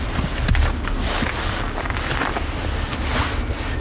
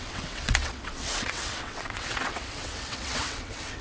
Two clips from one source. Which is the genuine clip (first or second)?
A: first